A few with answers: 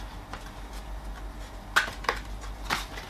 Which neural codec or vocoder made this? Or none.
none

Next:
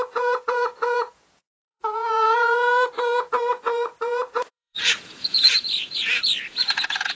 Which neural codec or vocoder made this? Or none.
vocoder, Vocos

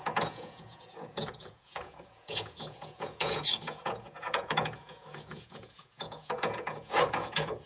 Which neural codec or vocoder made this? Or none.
vocoder, Vocos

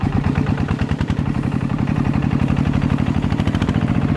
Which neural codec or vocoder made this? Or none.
vocoder, BigVGAN v2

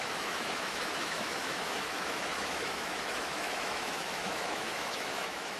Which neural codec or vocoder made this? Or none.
autoencoder, DAC-VAE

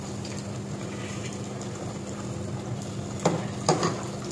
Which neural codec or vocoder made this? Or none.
none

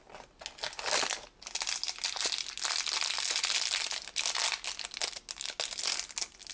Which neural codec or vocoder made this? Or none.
none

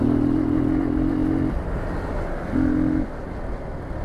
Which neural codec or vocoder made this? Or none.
none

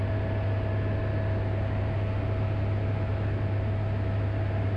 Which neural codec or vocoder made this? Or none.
none